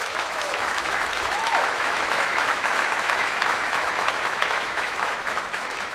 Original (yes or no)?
no